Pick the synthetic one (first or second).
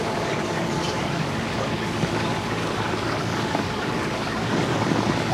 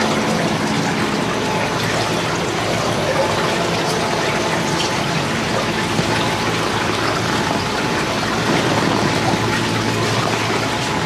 first